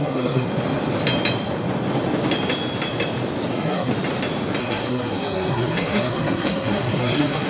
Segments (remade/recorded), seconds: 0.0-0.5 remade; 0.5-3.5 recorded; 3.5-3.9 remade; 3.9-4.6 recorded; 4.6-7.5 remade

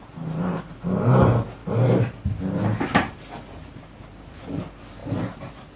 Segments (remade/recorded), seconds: 0.0-1.6 recorded; 1.6-3.8 remade; 3.8-5.8 recorded

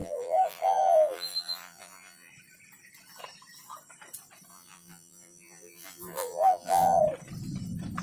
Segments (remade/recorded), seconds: 0.0-2.3 remade; 2.3-4.5 recorded; 4.5-7.0 remade; 7.0-8.0 recorded

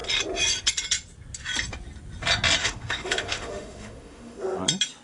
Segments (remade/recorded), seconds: 0.0-2.6 recorded; 2.6-4.6 remade; 4.6-5.0 recorded